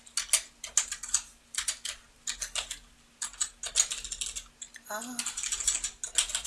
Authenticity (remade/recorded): recorded